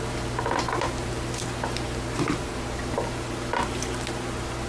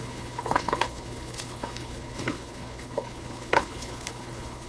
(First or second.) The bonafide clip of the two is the first